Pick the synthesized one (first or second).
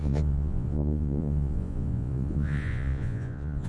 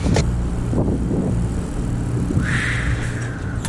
first